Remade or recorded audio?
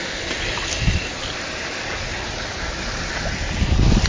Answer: recorded